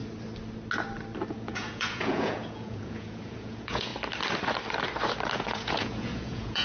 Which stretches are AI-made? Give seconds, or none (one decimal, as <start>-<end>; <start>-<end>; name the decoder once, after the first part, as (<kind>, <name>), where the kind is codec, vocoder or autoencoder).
1.3-3.9 (vocoder, Vocos); 5.4-6.6